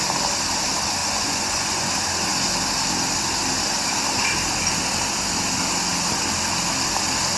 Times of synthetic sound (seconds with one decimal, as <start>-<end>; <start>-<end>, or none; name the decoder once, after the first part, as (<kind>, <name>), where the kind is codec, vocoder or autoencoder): 1.0-1.9 (vocoder, Vocos)